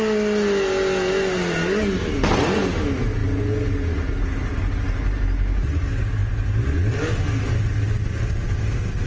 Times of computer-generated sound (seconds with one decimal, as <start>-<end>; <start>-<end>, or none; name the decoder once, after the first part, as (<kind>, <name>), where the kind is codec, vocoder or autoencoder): none